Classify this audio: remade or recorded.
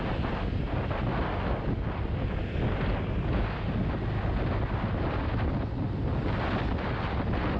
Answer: recorded